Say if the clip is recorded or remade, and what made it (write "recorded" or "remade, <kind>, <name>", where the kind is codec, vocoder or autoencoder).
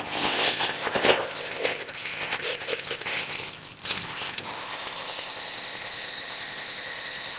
remade, codec, ZipCodec